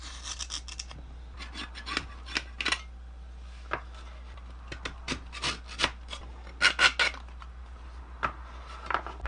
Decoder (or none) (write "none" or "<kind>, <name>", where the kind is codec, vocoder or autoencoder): none